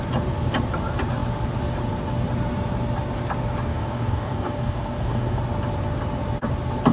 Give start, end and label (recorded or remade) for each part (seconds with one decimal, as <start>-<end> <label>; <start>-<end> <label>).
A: 0.0-3.7 recorded; 3.7-5.4 remade; 5.4-6.9 recorded